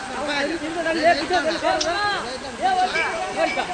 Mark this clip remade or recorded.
recorded